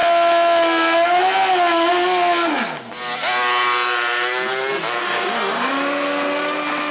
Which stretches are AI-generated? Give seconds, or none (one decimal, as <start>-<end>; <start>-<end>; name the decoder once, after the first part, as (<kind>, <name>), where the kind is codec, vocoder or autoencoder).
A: 5.0-5.7 (codec, DAC)